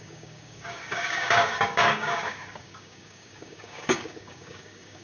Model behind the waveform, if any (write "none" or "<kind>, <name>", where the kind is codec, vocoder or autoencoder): codec, DAC